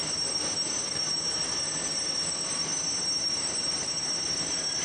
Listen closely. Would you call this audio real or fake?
real